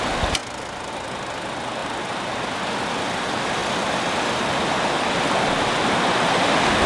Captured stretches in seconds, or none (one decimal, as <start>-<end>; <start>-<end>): 0.0-3.6; 5.6-6.9